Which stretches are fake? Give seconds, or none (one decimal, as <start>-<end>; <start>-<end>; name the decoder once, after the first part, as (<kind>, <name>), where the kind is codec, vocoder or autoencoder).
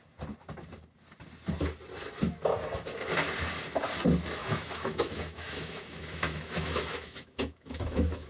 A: 4.4-8.3 (autoencoder, DAC-VAE)